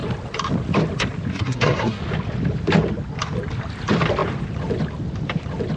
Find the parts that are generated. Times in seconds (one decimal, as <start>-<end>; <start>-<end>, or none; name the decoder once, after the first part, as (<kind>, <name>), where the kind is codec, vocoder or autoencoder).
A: 1.3-2.0 (codec, SNAC)